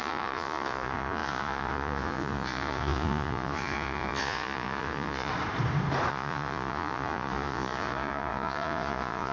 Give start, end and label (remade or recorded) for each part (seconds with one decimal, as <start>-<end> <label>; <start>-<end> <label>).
0.0-5.3 remade; 5.3-6.1 recorded; 6.1-9.3 remade